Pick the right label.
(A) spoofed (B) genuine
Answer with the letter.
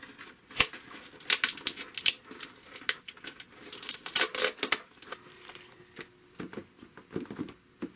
B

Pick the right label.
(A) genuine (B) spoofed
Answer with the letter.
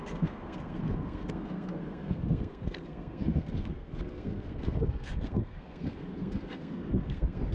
B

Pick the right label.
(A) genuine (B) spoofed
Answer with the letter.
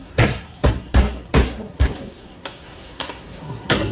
B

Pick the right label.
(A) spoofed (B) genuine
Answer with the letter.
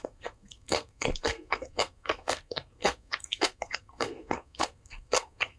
A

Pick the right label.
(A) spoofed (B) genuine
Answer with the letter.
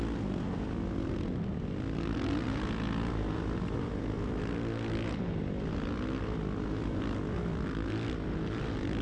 B